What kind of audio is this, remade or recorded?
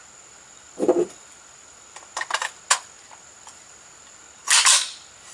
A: recorded